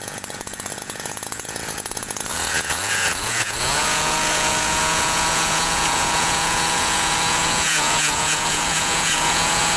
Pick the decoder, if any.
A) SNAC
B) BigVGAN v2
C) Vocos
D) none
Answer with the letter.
C